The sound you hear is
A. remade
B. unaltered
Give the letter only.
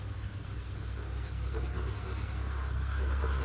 A